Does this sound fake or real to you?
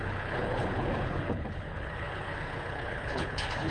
fake